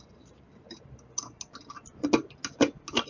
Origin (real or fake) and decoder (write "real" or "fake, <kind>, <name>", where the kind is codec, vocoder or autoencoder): real